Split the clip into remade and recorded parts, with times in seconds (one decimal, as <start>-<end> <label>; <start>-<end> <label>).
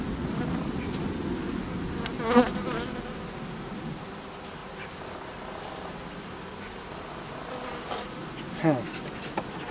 0.0-9.7 recorded